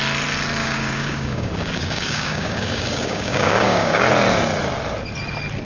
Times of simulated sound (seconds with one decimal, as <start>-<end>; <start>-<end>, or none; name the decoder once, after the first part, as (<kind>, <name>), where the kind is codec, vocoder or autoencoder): 0.6-4.0 (codec, DAC)